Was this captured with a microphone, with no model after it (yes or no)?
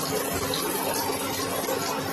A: yes